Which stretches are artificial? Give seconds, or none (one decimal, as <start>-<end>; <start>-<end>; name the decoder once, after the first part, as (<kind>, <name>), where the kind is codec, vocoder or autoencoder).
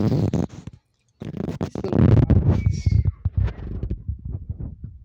none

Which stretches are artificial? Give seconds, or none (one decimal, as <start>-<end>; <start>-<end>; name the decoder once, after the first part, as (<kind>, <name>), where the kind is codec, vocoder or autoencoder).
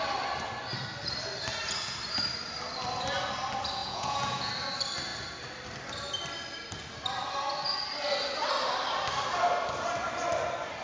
3.8-4.5 (vocoder, Vocos)